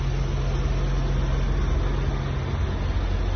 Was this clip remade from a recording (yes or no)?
no